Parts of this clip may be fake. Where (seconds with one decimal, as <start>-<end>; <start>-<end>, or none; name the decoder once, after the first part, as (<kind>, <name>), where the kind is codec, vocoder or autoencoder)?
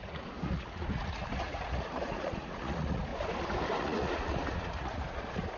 0.0-3.1 (vocoder, Vocos); 3.8-5.6